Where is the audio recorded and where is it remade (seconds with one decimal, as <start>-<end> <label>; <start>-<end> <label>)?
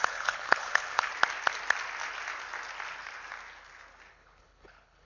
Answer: 0.0-1.1 remade; 1.1-4.1 recorded; 4.1-5.0 remade